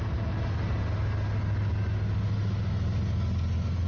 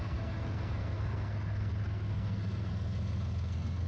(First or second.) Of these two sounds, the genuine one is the first